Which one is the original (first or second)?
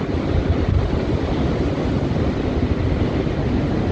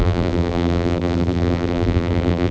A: first